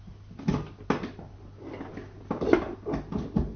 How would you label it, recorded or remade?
recorded